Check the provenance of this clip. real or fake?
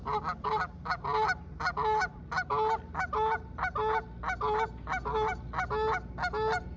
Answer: real